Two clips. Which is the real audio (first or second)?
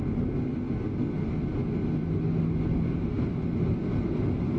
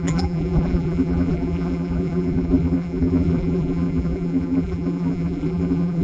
first